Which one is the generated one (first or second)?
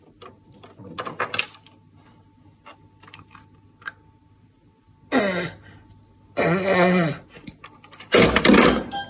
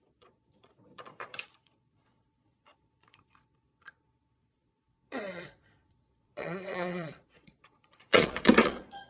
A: second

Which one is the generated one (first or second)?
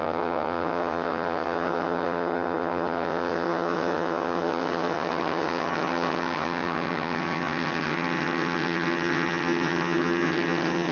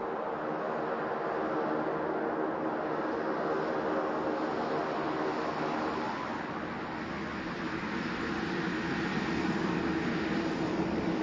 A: first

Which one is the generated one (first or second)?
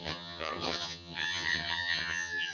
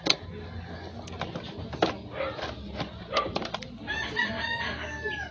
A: first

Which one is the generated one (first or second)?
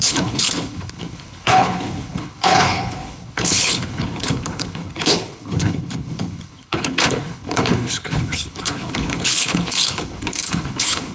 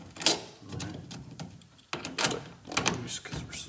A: first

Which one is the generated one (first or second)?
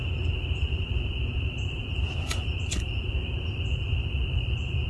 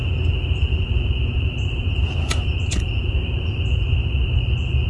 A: first